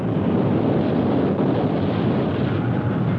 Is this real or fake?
real